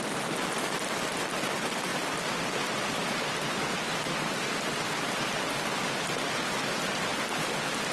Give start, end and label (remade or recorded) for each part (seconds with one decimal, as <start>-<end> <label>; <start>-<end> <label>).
0.0-7.9 recorded